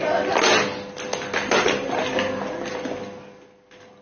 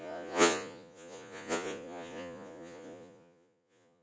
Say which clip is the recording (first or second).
first